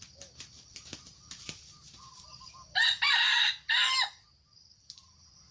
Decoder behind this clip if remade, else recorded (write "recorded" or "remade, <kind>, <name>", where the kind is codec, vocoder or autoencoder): recorded